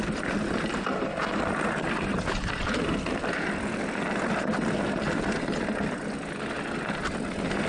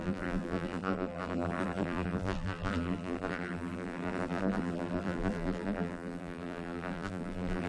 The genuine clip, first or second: first